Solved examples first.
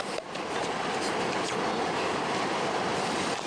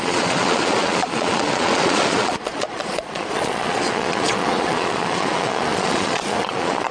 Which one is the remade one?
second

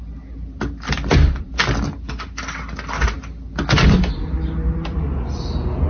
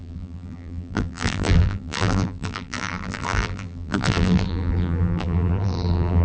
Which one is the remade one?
second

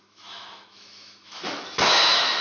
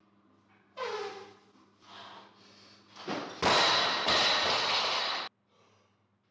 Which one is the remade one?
first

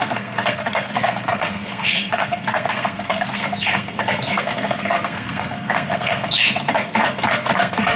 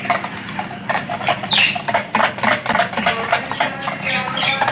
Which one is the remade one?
first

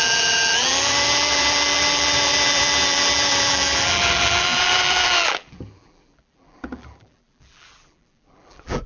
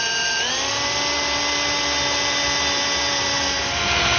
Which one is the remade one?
first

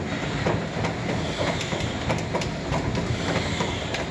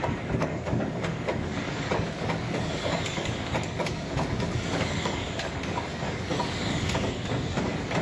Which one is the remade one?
second